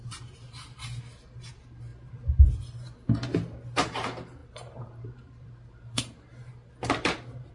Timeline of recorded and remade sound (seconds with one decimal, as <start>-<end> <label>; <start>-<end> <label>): 0.0-1.9 remade; 1.9-3.8 recorded; 3.8-7.5 remade